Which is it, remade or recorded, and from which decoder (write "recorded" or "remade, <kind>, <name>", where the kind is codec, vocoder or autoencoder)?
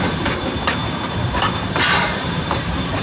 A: remade, vocoder, BigVGAN v2